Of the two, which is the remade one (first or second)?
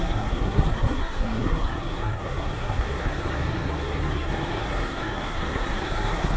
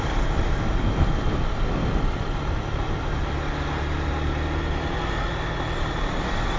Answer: first